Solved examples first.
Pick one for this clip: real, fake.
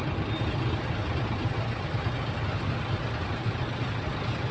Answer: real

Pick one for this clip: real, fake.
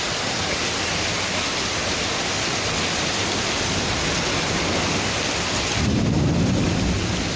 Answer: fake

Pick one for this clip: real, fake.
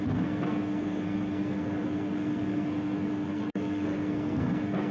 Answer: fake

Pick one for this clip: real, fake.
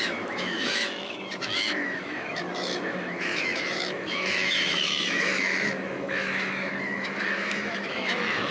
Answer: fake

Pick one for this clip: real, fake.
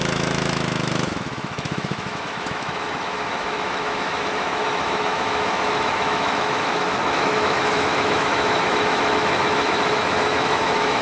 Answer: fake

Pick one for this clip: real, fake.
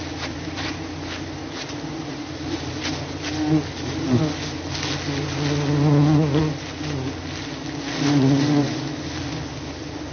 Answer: real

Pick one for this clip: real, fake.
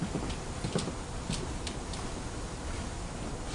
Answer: real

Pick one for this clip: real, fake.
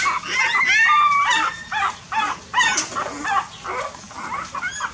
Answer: real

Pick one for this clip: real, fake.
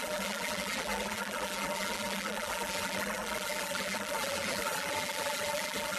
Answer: fake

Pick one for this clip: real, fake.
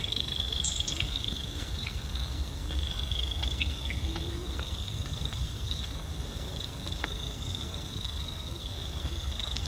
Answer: fake